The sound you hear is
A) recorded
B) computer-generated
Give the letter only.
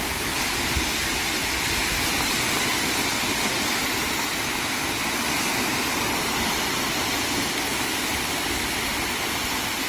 A